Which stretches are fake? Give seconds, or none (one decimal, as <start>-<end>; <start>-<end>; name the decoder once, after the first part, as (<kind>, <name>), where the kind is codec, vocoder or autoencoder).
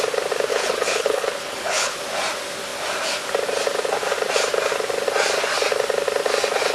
0.5-2.0 (codec, HILCodec)